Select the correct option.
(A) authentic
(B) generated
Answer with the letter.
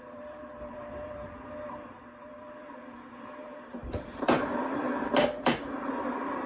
B